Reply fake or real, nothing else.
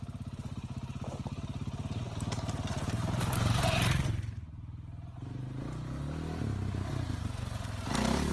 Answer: real